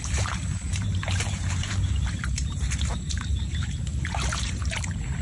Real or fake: fake